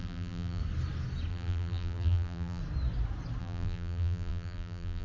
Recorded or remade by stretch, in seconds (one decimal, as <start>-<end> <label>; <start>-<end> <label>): 0.0-0.6 remade; 0.6-1.3 recorded; 1.3-2.6 remade; 2.6-3.4 recorded; 3.4-5.0 remade

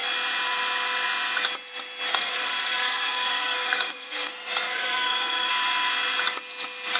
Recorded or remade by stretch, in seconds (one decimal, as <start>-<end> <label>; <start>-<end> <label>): 0.0-2.1 recorded; 2.1-5.5 remade; 5.5-7.0 recorded

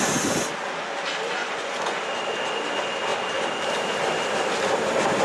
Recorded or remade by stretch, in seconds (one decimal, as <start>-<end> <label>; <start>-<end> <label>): 0.0-1.4 recorded; 1.4-2.0 remade; 2.0-5.2 recorded

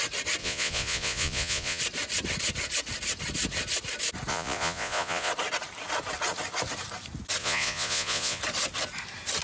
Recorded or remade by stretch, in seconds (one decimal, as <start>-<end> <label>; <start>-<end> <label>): 0.0-0.4 recorded; 0.4-1.8 remade; 1.8-4.3 recorded; 4.3-5.3 remade; 5.3-7.4 recorded; 7.4-8.4 remade; 8.4-9.4 recorded

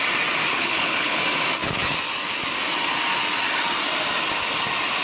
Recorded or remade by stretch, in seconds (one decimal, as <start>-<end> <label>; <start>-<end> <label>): 0.0-0.5 recorded; 0.5-1.2 remade; 1.2-5.0 recorded

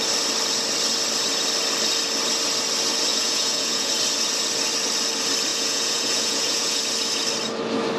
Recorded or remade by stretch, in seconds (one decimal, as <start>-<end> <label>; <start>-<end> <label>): 0.0-3.1 recorded; 3.1-3.9 remade; 3.9-5.5 recorded; 5.5-6.8 remade; 6.8-8.0 recorded

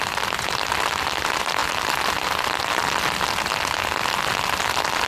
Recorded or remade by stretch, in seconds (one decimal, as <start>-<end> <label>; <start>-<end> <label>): 0.0-5.1 recorded

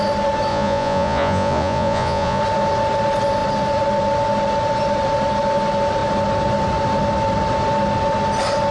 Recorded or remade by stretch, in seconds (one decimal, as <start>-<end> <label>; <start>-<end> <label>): 0.0-0.5 recorded; 0.5-2.4 remade; 2.4-8.7 recorded